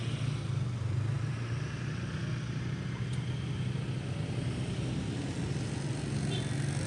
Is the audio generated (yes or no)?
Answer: no